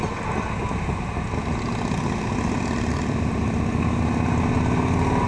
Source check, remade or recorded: recorded